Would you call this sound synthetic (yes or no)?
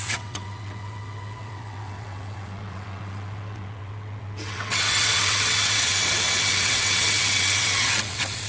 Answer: yes